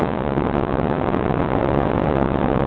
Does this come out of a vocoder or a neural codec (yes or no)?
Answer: yes